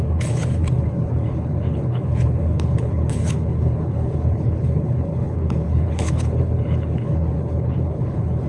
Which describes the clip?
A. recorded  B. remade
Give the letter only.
B